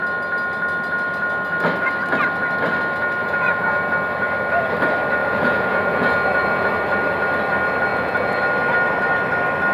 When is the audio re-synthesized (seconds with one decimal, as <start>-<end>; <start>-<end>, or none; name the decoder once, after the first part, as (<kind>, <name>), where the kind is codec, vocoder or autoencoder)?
3.2-3.8 (vocoder, Vocos); 5.2-6.7; 7.9-8.4

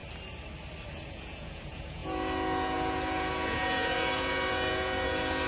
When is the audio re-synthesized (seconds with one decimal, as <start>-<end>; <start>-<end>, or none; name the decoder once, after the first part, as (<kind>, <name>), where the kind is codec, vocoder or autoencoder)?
0.9-5.5 (vocoder, Vocos)

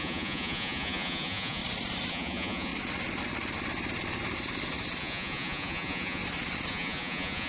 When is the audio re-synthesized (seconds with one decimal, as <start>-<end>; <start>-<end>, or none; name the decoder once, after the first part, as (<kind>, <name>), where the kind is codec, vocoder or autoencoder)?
0.0-1.6 (vocoder, Vocos); 2.1-2.7; 5.0-6.2; 6.7-7.5

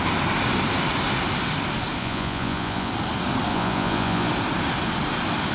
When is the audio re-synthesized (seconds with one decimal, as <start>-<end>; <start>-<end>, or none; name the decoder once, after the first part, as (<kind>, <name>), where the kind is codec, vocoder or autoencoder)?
2.0-2.9 (vocoder, Vocos); 3.5-4.3

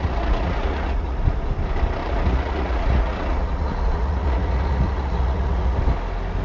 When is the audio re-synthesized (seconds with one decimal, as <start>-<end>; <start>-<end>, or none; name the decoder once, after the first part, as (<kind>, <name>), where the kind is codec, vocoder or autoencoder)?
0.0-1.2 (vocoder, Vocos); 2.0-5.8